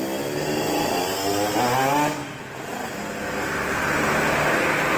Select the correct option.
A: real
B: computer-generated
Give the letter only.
A